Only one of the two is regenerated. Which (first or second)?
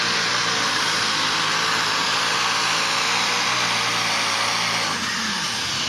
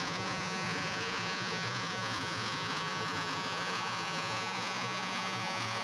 second